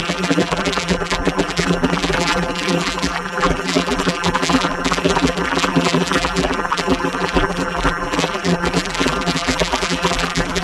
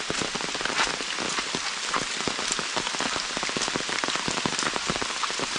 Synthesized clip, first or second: first